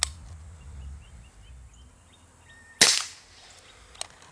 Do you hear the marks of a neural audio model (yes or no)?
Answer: no